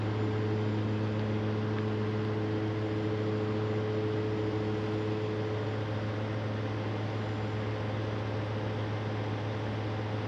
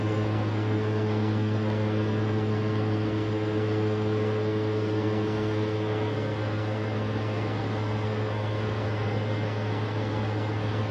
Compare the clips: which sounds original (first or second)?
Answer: first